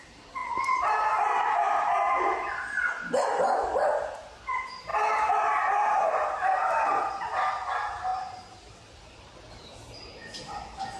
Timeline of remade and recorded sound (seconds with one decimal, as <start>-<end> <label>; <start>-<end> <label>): 0.0-4.9 recorded; 4.9-7.1 remade; 7.1-8.1 recorded; 8.1-9.5 remade; 9.5-11.0 recorded